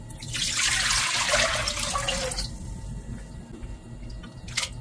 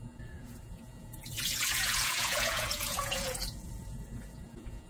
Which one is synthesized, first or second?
second